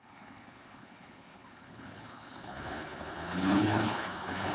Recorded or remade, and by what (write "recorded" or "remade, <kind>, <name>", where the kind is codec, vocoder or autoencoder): remade, codec, HILCodec